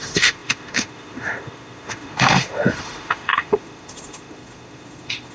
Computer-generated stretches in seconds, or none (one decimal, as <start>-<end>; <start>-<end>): 0.0-5.3